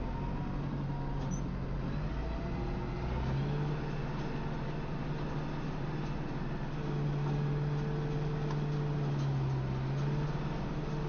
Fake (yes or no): no